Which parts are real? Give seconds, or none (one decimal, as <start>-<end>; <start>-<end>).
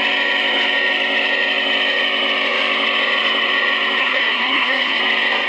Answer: 0.0-4.0; 5.0-5.5